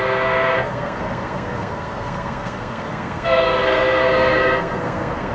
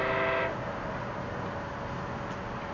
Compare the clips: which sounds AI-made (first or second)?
first